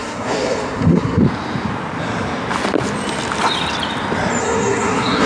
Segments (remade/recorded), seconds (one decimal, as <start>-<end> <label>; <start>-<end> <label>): 0.0-1.2 remade; 1.2-4.4 recorded; 4.4-5.3 remade

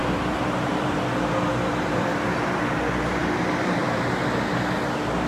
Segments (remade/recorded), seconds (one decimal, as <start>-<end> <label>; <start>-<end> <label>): 0.0-1.0 remade; 1.0-1.7 recorded; 1.7-2.8 remade; 2.8-3.2 recorded; 3.2-4.2 remade; 4.2-5.3 recorded

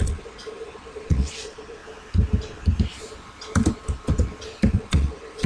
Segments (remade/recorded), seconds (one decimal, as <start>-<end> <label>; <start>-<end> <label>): 0.0-1.8 remade; 1.8-4.7 recorded; 4.7-5.5 remade

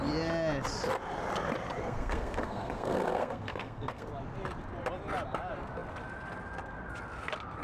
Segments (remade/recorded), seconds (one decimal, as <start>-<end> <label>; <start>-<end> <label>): 0.0-1.8 recorded; 1.8-4.1 remade; 4.1-7.6 recorded

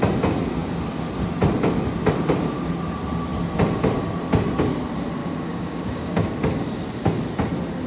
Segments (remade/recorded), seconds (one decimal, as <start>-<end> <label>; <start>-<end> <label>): 0.0-5.2 recorded; 5.2-6.3 remade; 6.3-7.9 recorded

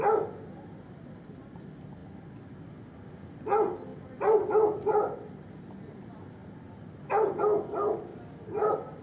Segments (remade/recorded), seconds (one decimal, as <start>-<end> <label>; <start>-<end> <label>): 0.0-3.9 recorded; 3.9-5.6 remade; 5.6-8.1 recorded; 8.1-9.0 remade